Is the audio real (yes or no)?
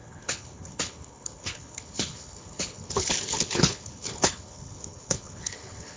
no